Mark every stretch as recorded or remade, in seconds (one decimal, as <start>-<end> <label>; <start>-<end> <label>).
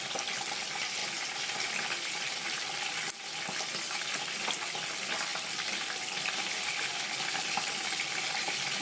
0.0-1.0 recorded; 1.0-4.1 remade; 4.1-5.3 recorded; 5.3-6.8 remade; 6.8-8.8 recorded